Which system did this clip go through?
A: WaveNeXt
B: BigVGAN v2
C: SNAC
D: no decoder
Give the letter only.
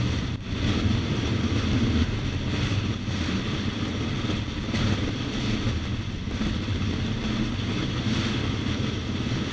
D